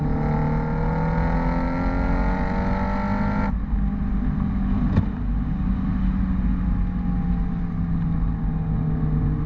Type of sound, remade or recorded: recorded